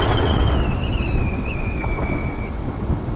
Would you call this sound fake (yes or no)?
yes